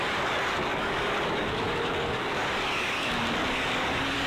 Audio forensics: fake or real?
fake